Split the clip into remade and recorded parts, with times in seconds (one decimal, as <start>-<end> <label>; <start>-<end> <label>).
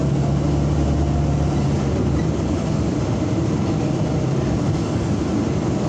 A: 0.0-5.9 recorded